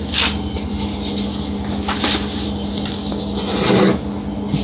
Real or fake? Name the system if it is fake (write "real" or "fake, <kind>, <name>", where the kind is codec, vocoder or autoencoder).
real